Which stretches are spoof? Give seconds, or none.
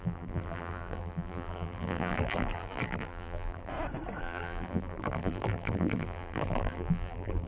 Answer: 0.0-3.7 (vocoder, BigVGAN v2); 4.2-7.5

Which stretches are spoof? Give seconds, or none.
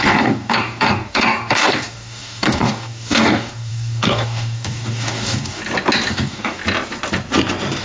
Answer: 0.0-5.6 (codec, DAC); 6.1-6.6